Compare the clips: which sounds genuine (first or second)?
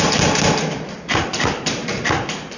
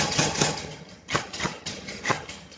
first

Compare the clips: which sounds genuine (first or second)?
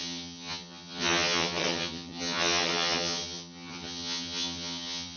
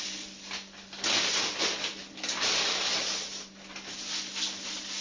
second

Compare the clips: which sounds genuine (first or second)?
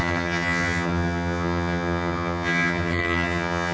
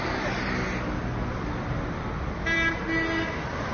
second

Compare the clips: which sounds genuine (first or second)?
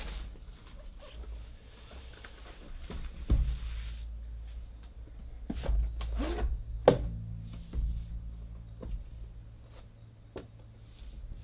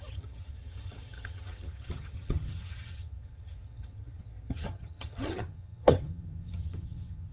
first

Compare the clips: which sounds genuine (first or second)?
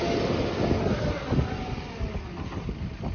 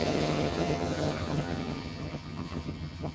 first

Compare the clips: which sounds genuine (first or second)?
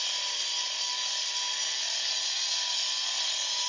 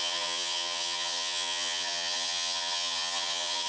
first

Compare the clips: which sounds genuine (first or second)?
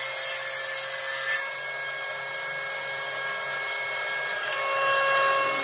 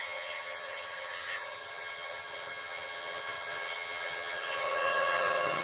first